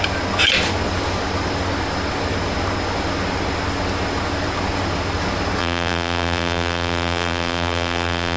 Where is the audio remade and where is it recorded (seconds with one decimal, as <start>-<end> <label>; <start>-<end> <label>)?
0.0-5.6 recorded; 5.6-8.4 remade